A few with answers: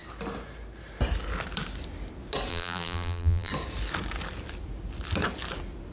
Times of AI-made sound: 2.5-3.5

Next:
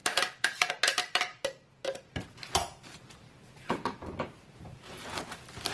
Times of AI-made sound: 0.0-0.7; 1.3-4.6

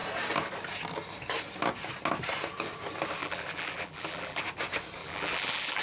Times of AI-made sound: 3.2-4.4; 5.0-5.8

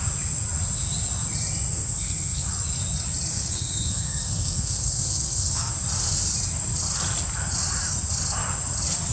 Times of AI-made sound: 1.7-2.5; 3.3-5.7

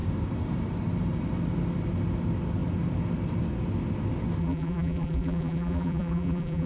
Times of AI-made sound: 4.4-6.7

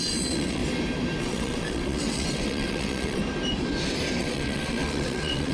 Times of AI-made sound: 0.0-0.6; 1.2-3.2; 4.2-5.5

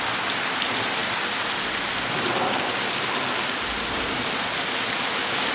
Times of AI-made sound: 1.0-4.3